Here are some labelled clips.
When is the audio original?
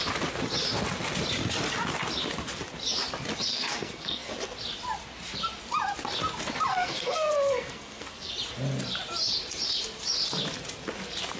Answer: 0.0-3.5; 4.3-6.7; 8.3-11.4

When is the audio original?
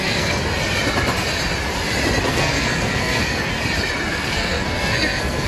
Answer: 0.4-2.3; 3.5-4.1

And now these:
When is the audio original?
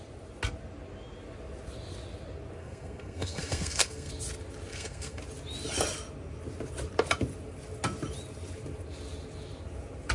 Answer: 0.0-2.6; 4.1-4.7; 5.2-10.1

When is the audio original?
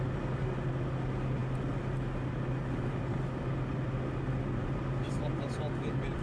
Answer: 0.0-6.2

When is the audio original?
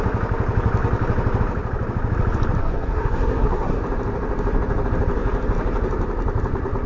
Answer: 0.0-2.6; 3.8-6.9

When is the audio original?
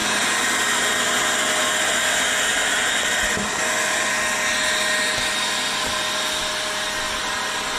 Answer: 0.0-7.8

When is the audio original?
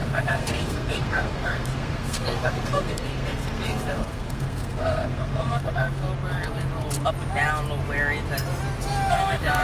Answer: 6.1-9.1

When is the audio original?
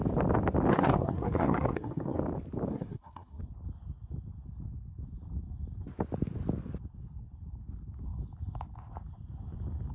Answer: 0.0-0.7; 2.2-2.7; 3.4-9.9